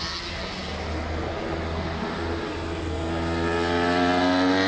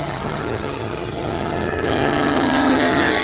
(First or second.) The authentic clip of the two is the first